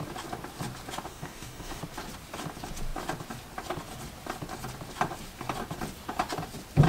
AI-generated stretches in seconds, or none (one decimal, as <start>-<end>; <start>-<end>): 1.1-1.8